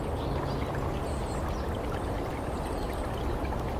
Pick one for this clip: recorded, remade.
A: recorded